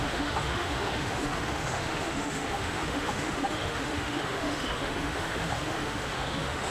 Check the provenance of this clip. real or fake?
fake